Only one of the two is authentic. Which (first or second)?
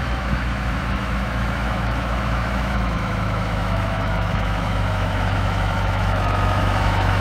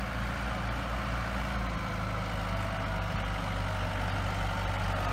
second